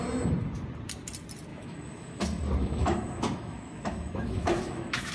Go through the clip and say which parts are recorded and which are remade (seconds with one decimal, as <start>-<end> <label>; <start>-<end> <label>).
0.0-1.5 recorded; 1.5-2.2 remade; 2.2-2.6 recorded; 2.6-5.1 remade